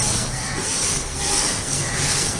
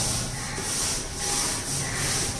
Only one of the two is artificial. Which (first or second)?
first